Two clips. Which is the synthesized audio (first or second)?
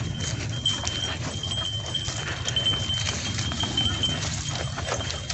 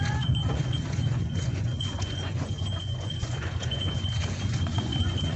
second